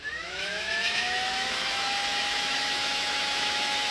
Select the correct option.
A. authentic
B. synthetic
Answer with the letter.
B